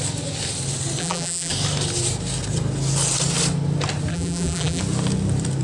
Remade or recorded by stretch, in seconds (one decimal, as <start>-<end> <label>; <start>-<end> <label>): 0.0-1.0 recorded; 1.0-1.5 remade; 1.5-4.1 recorded; 4.1-4.8 remade; 4.8-5.6 recorded